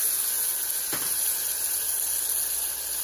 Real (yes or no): yes